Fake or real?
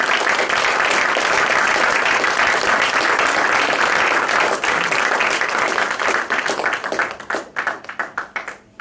real